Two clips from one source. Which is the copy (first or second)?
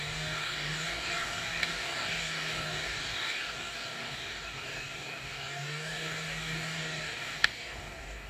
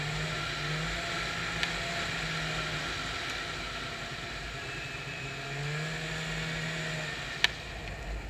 first